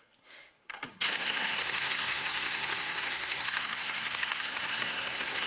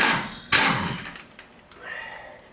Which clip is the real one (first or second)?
second